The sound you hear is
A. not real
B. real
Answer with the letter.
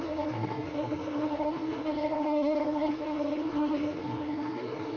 A